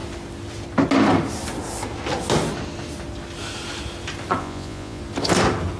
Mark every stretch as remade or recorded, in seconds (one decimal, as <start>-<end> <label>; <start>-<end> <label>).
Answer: 0.0-4.4 recorded; 4.4-5.0 remade; 5.0-5.8 recorded